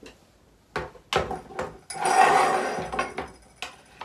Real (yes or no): yes